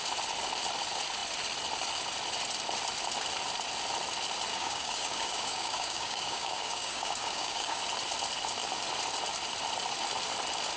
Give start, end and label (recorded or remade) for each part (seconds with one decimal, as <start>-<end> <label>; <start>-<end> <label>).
0.0-4.5 recorded; 4.5-7.8 remade; 7.8-10.8 recorded